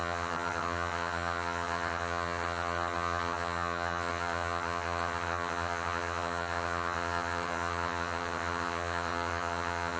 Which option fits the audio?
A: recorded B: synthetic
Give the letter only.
B